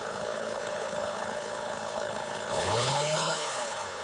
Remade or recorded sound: remade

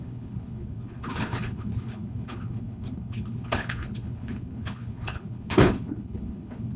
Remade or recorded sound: remade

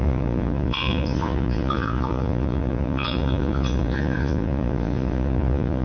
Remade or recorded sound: remade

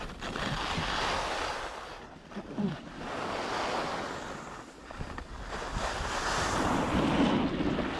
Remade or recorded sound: recorded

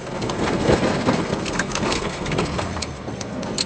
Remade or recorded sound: remade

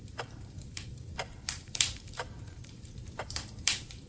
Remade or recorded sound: remade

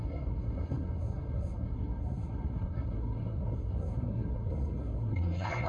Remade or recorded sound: remade